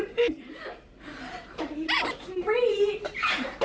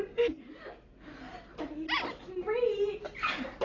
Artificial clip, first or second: first